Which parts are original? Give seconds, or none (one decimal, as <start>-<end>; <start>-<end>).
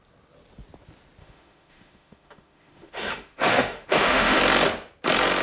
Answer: 0.0-1.2; 4.4-5.4